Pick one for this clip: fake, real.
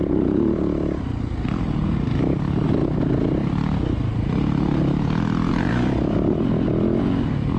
real